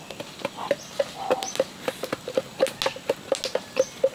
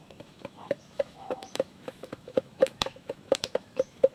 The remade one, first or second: second